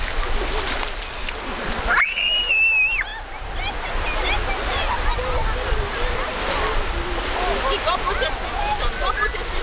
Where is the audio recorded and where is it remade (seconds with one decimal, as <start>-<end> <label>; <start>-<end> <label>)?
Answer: 0.0-9.6 recorded